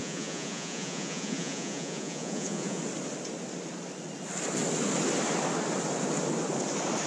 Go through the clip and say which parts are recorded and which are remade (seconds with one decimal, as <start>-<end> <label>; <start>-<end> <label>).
0.0-2.8 remade; 2.8-7.1 recorded